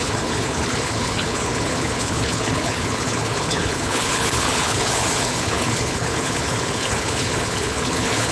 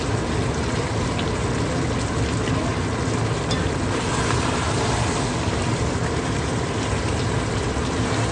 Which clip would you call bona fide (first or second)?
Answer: second